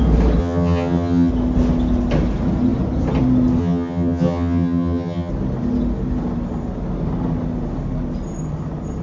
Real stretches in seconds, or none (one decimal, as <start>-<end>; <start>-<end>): 0.0-0.4; 1.3-3.6; 5.3-9.0